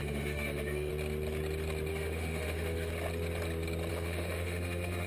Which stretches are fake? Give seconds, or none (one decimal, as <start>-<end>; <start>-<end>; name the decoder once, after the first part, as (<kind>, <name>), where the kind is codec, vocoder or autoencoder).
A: 0.0-0.9 (autoencoder, DAC-VAE); 1.9-2.9; 3.9-5.1